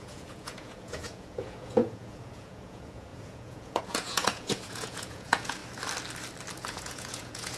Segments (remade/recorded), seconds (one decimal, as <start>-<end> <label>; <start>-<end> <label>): 0.0-5.6 remade; 5.6-6.5 recorded; 6.5-7.6 remade